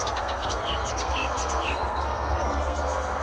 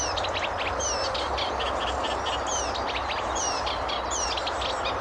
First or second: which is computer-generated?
first